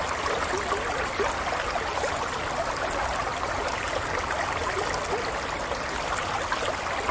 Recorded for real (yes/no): yes